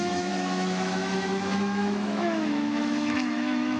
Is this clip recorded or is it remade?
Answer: remade